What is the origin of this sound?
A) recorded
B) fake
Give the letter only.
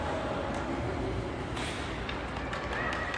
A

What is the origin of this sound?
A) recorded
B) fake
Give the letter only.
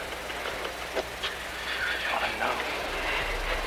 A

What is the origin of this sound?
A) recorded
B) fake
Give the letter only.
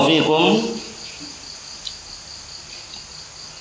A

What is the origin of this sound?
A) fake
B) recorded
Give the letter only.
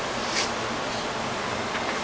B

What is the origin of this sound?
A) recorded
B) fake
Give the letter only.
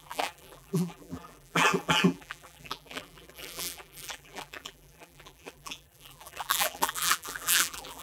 B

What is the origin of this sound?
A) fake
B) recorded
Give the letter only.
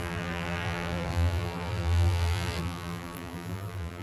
A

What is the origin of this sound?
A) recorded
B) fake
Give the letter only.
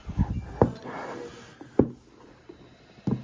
A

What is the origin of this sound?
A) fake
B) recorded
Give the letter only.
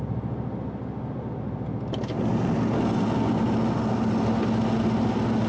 B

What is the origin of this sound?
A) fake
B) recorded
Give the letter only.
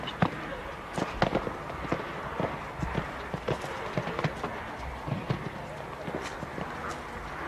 B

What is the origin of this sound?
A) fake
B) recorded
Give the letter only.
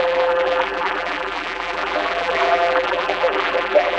A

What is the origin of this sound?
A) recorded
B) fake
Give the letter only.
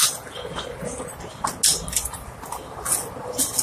A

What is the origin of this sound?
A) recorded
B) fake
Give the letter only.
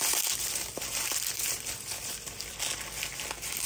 B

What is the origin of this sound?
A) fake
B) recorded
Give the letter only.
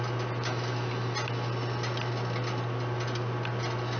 B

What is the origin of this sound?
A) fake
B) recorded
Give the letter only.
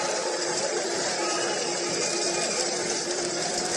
A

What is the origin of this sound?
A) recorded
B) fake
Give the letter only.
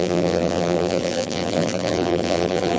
B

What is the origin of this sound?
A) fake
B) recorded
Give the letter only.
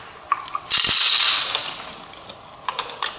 B